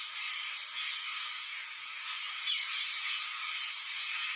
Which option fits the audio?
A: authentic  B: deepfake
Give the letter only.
A